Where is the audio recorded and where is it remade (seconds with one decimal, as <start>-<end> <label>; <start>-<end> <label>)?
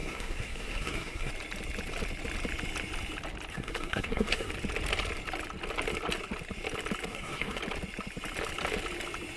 0.0-1.3 remade; 1.3-3.5 recorded; 3.5-4.5 remade; 4.5-7.1 recorded; 7.1-7.6 remade; 7.6-9.4 recorded